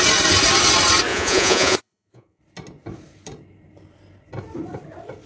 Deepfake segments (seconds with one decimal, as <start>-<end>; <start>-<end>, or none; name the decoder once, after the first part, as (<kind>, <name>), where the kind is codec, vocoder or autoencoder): 1.1-2.4 (vocoder, Vocos)